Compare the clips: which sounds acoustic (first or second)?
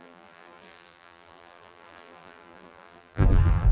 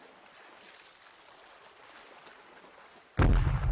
second